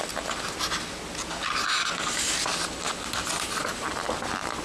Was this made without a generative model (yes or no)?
yes